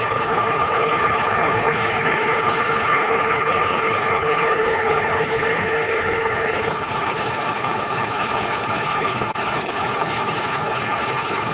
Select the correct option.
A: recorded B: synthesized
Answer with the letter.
B